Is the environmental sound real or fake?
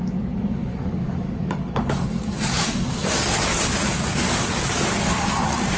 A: fake